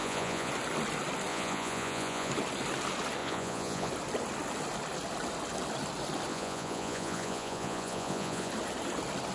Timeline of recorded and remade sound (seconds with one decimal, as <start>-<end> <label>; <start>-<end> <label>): 0.0-0.5 remade; 0.5-1.3 recorded; 1.3-2.3 remade; 2.3-3.2 recorded; 3.2-3.9 remade; 3.9-6.3 recorded; 6.3-8.5 remade; 8.5-9.3 recorded